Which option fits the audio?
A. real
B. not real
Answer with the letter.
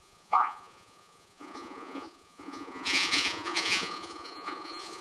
B